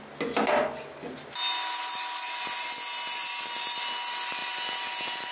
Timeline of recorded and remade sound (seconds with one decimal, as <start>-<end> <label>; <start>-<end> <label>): 0.0-5.3 recorded